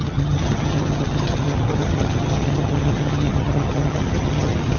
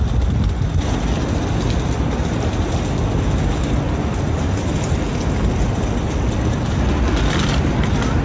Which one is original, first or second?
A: second